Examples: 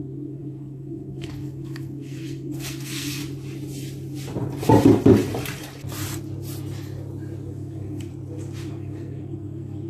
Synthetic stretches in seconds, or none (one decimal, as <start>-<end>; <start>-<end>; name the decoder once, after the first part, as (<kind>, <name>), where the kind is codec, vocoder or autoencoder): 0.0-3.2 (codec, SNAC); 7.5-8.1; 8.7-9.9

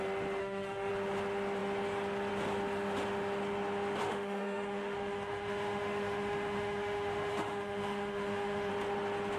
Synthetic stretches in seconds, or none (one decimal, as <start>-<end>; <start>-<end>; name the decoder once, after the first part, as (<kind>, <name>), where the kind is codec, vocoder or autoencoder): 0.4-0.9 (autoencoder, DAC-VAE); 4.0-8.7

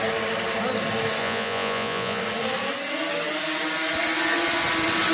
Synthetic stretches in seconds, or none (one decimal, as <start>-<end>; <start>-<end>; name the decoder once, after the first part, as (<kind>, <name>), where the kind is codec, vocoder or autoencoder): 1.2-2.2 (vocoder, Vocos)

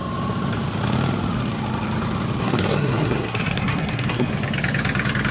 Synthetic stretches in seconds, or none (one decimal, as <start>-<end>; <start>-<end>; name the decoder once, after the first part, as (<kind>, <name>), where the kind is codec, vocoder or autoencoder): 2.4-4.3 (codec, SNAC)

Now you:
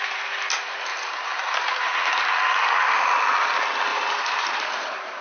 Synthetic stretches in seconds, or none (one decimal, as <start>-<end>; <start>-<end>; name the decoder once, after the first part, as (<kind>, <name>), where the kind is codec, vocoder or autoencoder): 0.9-2.2 (vocoder, BigVGAN v2); 3.9-5.2

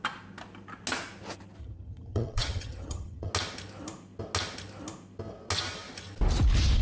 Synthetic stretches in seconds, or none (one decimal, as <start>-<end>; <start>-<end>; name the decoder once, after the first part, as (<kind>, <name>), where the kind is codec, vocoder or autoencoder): 1.6-3.3 (vocoder, HiFi-GAN)

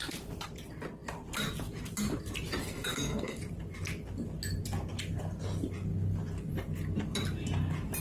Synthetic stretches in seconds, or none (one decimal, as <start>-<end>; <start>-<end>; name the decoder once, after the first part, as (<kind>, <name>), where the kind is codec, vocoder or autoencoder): 2.6-3.4 (codec, SNAC)